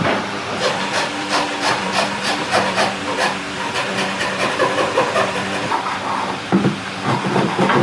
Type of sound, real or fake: fake